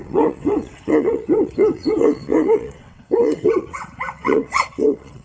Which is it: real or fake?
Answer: fake